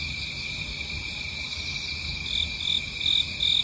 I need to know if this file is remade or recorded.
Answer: recorded